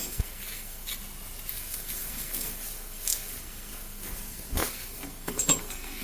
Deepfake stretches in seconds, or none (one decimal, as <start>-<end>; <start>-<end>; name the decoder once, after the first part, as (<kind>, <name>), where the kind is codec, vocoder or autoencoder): 0.0-0.9 (codec, SNAC); 1.5-6.0